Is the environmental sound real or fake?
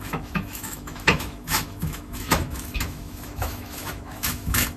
fake